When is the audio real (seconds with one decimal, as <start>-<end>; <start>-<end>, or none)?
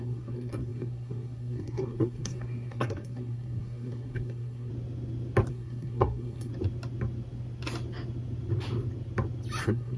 4.7-5.5; 6.5-9.6